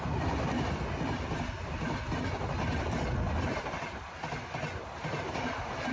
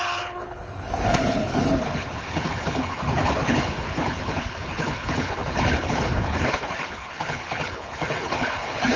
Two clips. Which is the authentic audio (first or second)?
first